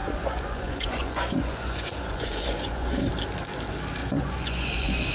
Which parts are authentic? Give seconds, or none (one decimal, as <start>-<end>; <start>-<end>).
3.1-4.0